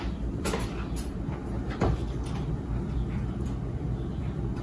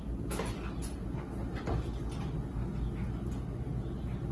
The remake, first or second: first